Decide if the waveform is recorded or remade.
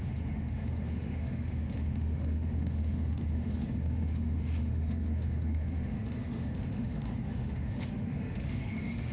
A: remade